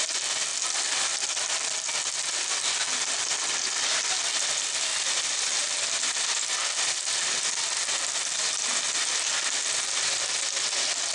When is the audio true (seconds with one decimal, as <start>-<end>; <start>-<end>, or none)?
0.0-11.1